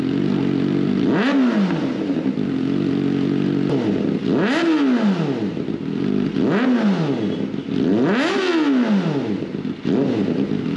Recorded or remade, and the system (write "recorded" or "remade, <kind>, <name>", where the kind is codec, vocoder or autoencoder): recorded